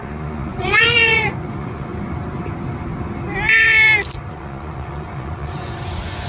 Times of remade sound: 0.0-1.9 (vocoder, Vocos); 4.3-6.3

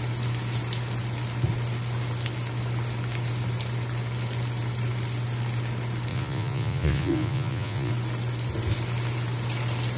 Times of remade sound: 6.1-7.9 (vocoder, Vocos)